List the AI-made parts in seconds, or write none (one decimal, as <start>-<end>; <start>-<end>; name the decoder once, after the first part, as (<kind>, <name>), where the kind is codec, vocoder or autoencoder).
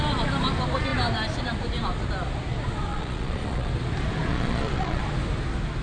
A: 2.9-3.7 (vocoder, Vocos); 4.3-5.0